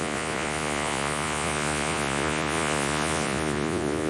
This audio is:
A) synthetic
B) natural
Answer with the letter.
A